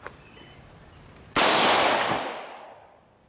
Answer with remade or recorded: recorded